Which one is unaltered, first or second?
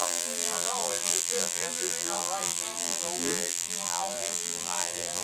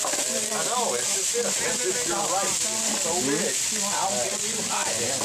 second